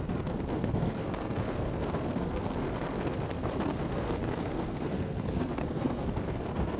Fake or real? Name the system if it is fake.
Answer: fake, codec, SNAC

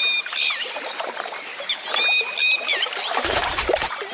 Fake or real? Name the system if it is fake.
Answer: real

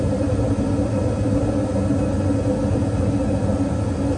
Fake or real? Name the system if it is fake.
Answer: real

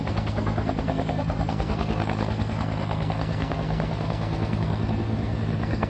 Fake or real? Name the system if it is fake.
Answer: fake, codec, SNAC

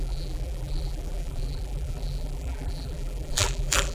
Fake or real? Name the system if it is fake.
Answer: fake, vocoder, BigVGAN v2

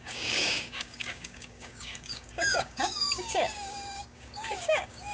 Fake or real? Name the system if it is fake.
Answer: fake, codec, DAC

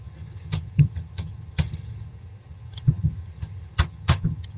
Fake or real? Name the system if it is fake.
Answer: fake, vocoder, HiFi-GAN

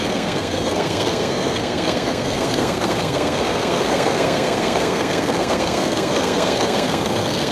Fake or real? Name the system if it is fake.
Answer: fake, codec, SNAC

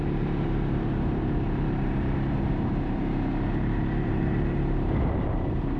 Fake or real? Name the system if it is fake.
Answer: fake, vocoder, BigVGAN v2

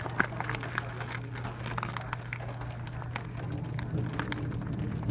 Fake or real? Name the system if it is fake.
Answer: real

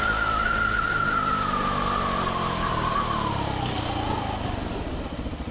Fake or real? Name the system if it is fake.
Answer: real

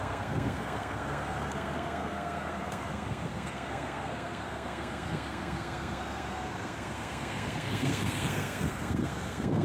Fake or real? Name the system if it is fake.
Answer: fake, codec, SNAC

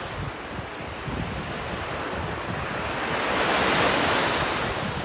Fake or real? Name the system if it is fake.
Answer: real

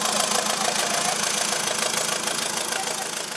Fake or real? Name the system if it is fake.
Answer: real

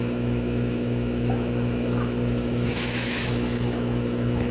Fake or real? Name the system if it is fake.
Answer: fake, autoencoder, DAC-VAE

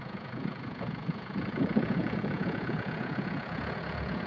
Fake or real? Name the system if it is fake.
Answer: fake, vocoder, Vocos